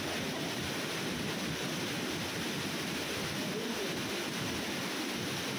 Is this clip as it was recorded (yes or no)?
yes